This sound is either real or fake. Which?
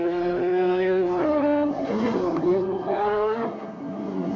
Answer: fake